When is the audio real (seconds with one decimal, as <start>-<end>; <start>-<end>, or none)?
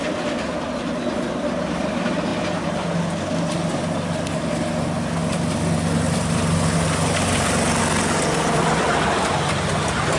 0.0-10.2